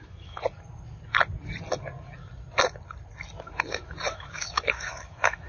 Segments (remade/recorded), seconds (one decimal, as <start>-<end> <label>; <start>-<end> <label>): 0.0-0.4 remade; 0.4-3.4 recorded; 3.4-5.5 remade